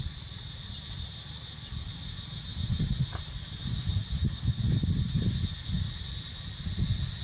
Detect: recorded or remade recorded